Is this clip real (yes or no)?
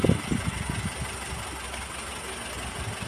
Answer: yes